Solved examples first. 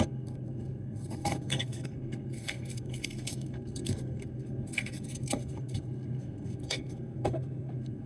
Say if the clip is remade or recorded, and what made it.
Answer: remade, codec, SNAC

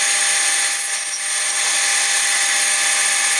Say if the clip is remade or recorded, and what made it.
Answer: recorded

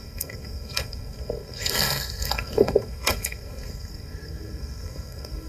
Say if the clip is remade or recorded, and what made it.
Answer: remade, codec, SNAC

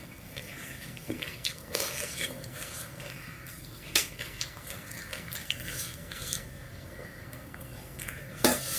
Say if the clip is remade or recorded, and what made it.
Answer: remade, codec, SNAC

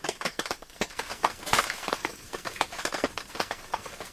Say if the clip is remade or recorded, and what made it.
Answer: remade, codec, SNAC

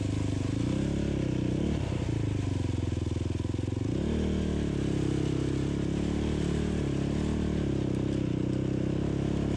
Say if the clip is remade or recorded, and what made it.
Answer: recorded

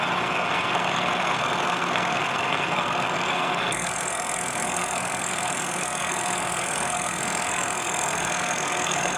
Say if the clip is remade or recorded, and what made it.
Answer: remade, codec, SNAC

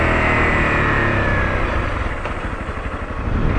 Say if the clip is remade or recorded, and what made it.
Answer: recorded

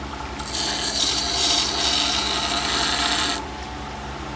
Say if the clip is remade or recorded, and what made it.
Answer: recorded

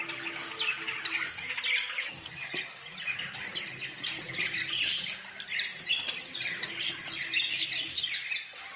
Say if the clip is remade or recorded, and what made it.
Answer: recorded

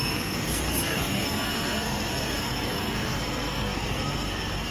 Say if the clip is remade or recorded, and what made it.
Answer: remade, codec, SNAC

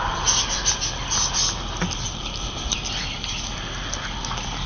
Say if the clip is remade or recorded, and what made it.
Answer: recorded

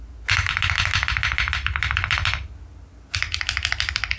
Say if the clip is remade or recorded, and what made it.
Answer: recorded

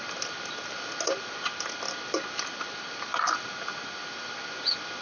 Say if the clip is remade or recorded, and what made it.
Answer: recorded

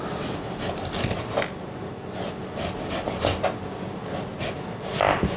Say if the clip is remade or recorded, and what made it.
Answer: recorded